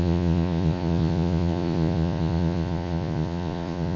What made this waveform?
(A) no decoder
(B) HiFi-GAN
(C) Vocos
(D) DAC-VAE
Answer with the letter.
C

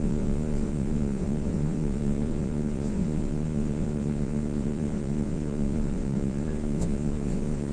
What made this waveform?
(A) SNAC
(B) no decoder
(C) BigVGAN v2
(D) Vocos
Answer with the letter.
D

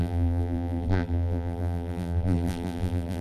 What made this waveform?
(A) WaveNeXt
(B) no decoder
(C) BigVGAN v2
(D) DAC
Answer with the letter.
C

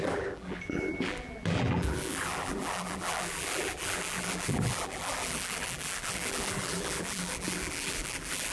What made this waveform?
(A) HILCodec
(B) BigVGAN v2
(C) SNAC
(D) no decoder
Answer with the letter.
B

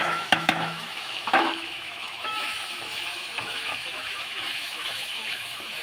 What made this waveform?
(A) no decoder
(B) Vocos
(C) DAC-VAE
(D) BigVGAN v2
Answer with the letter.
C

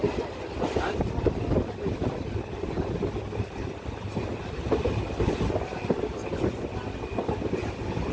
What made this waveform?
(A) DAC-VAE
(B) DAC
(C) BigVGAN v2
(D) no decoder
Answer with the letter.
D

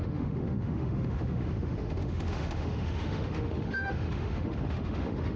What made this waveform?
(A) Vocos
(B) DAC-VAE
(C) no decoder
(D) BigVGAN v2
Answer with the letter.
B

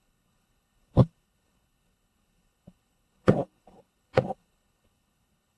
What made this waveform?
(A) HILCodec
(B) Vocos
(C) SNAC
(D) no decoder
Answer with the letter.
A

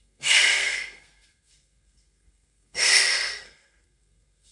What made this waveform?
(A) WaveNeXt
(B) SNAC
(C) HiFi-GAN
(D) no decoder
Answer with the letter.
B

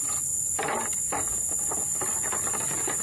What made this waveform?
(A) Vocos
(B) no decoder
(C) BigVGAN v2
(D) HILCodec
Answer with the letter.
B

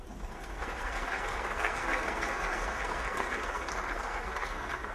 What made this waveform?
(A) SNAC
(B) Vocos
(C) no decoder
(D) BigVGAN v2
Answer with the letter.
A